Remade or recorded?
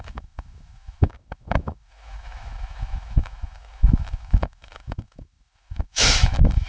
remade